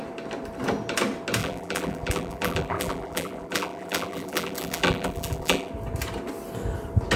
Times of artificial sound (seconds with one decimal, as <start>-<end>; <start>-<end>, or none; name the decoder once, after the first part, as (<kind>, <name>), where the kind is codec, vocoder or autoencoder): 1.4-5.7 (vocoder, BigVGAN v2)